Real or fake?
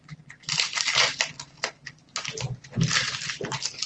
real